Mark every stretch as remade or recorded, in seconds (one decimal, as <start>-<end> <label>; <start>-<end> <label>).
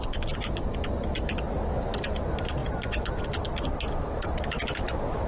0.0-2.6 recorded; 2.6-3.2 remade; 3.2-5.3 recorded